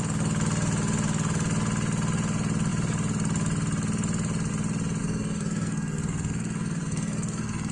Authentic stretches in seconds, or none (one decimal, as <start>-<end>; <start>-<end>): 0.0-5.0